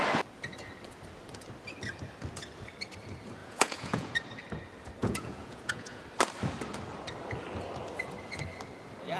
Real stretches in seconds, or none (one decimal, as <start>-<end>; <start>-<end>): 0.0-3.4; 4.1-5.0; 6.0-9.2